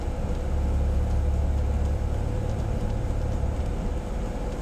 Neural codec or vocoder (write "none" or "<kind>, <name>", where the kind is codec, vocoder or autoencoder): none